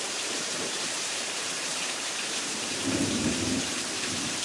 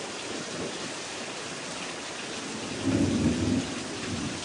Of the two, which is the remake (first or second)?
first